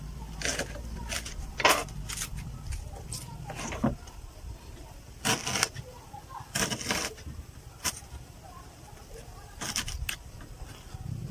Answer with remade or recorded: remade